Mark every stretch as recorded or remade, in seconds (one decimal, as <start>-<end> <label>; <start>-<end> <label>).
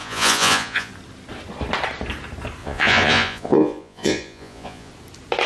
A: 0.0-0.9 remade; 0.9-2.6 recorded; 2.6-4.9 remade; 4.9-5.5 recorded